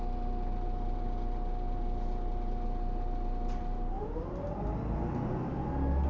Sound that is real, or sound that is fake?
real